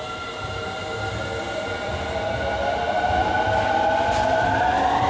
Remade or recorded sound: recorded